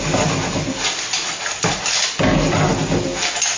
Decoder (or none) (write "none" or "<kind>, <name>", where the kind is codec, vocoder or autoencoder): none